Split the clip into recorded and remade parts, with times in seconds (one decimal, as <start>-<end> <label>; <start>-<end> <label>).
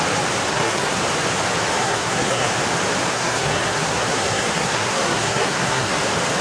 0.0-0.5 recorded; 0.5-1.0 remade; 1.0-1.8 recorded; 1.8-2.5 remade; 2.5-3.1 recorded; 3.1-6.0 remade; 6.0-6.4 recorded